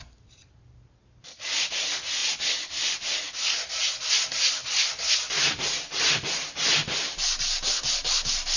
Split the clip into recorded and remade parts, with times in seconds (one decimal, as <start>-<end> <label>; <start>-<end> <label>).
0.0-8.6 recorded